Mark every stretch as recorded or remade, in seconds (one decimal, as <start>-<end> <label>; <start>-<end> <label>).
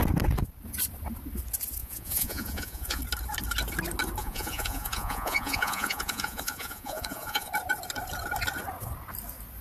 0.0-1.8 recorded; 1.8-3.0 remade; 3.0-4.2 recorded; 4.2-7.5 remade; 7.5-9.6 recorded